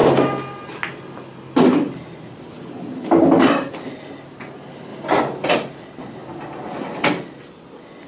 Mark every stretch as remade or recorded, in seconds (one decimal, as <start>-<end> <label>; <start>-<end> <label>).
0.0-8.1 recorded